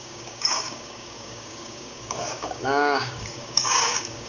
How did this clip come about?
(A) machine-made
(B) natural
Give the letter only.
A